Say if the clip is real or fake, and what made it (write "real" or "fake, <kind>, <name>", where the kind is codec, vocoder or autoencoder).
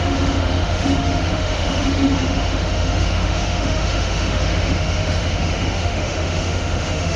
fake, autoencoder, DAC-VAE